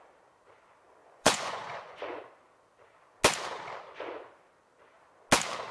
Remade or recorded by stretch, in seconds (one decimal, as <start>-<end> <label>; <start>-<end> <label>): 0.0-1.0 recorded; 1.0-2.2 remade; 2.2-5.7 recorded